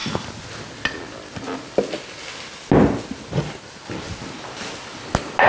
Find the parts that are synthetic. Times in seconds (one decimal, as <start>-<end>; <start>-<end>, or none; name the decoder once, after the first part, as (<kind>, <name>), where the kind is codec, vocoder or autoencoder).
none